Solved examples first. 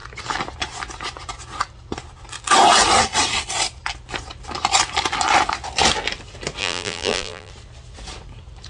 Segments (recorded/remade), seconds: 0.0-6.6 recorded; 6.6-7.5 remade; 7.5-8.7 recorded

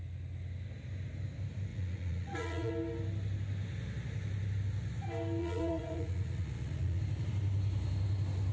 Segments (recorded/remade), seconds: 0.0-1.7 recorded; 1.7-2.7 remade; 2.7-5.4 recorded; 5.4-7.0 remade; 7.0-8.5 recorded

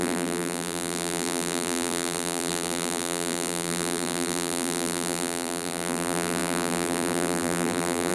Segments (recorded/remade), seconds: 0.0-8.1 remade

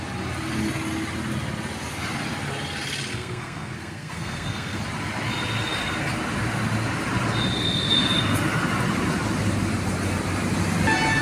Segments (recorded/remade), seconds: 0.0-3.1 recorded; 3.1-4.8 remade; 4.8-11.2 recorded

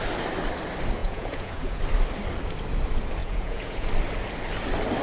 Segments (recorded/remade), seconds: 0.0-1.0 recorded; 1.0-1.8 remade; 1.8-3.2 recorded; 3.2-3.9 remade; 3.9-5.0 recorded

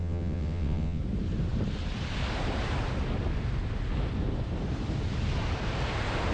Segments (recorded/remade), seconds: 0.0-1.0 remade; 1.0-6.3 recorded